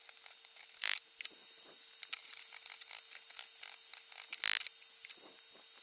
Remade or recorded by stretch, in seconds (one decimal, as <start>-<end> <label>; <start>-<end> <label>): 0.0-5.8 recorded